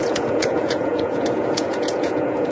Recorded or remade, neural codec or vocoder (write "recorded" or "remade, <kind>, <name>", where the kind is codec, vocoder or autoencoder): remade, vocoder, Vocos